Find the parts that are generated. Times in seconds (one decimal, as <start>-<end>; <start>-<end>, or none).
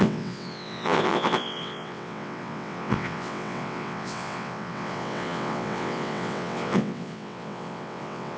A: 0.0-8.4